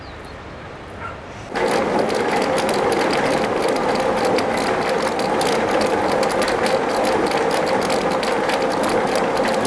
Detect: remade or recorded recorded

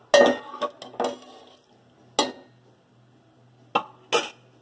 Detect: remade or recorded recorded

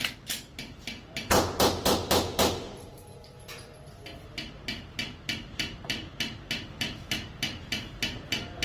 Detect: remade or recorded recorded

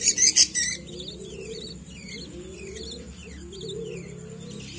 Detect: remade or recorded recorded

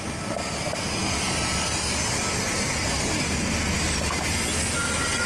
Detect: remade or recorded recorded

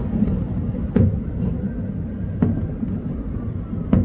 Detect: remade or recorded recorded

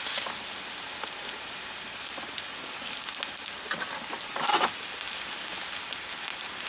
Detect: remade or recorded recorded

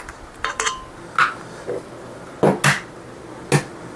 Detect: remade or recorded recorded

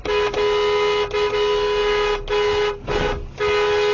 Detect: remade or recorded recorded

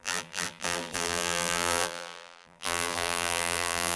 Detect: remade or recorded remade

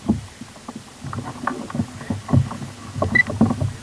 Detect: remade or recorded recorded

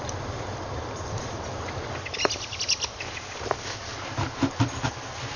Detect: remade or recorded recorded